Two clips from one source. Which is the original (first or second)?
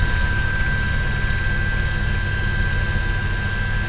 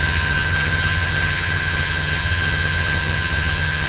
first